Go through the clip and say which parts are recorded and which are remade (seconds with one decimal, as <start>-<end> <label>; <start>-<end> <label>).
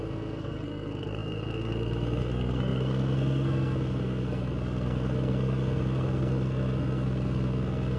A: 0.0-8.0 remade